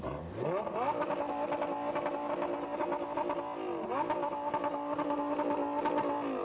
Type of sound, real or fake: real